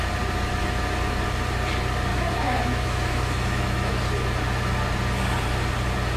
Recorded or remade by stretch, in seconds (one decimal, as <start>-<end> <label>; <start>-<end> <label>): 0.0-2.1 recorded; 2.1-3.9 remade; 3.9-6.2 recorded